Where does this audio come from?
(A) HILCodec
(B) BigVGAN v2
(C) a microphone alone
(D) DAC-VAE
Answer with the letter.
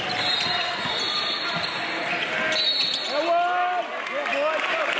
C